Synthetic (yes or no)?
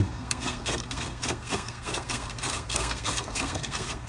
yes